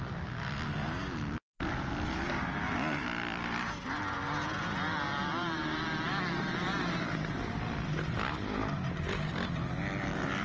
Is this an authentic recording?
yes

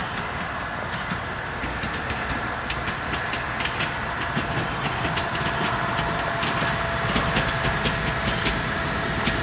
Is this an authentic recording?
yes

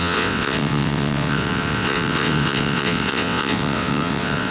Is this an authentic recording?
no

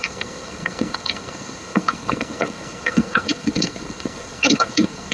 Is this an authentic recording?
no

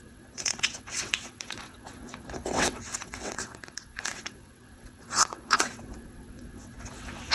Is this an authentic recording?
no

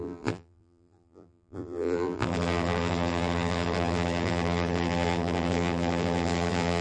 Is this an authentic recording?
no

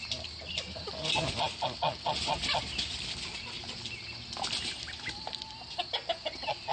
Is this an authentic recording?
yes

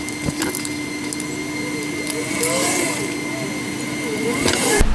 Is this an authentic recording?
yes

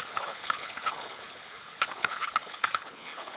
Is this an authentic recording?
no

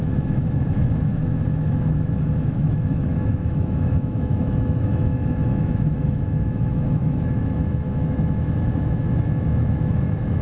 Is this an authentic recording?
no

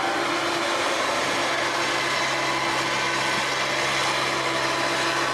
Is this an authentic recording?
yes